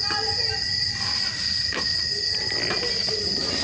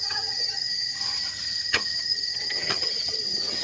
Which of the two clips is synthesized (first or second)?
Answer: second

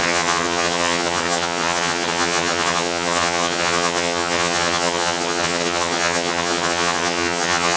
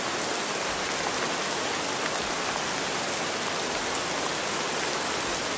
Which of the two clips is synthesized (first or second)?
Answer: first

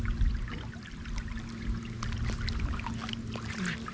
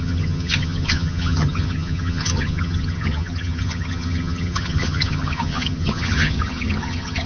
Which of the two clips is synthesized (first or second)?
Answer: second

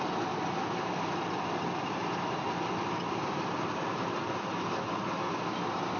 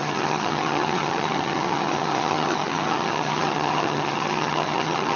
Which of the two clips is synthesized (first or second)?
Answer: second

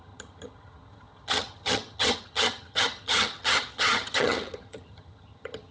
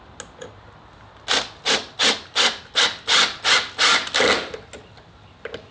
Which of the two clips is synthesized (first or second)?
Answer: first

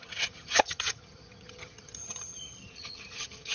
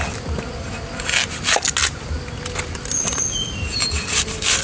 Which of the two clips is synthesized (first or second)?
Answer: first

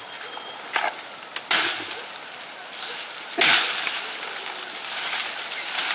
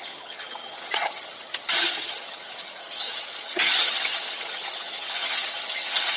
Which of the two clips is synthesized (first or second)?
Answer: second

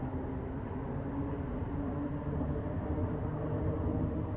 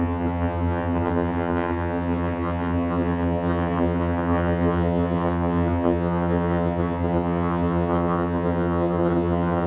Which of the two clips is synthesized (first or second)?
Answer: second